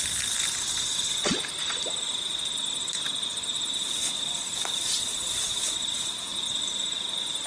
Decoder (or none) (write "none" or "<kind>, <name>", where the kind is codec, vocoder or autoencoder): none